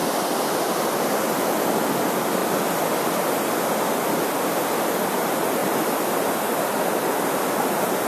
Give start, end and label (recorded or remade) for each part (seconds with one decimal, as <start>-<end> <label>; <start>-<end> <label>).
0.0-8.1 recorded